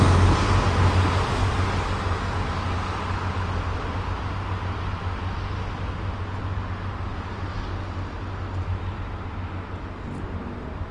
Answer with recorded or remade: recorded